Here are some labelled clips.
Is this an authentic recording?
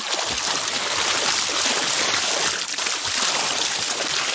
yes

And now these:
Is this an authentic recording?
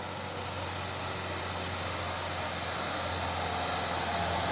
yes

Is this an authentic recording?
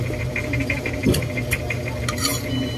yes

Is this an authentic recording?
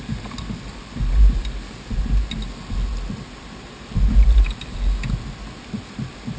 yes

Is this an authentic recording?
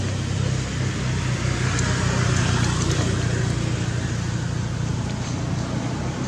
yes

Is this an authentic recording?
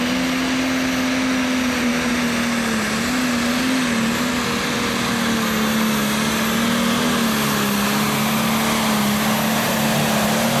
yes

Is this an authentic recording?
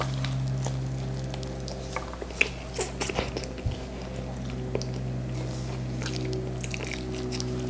yes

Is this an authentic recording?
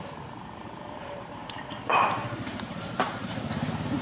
no